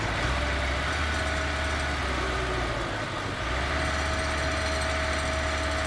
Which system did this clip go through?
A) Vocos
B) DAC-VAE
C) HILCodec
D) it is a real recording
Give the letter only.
D